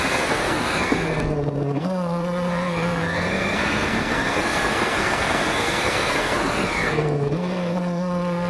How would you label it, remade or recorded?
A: remade